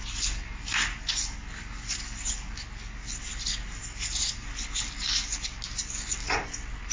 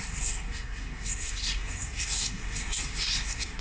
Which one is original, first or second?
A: first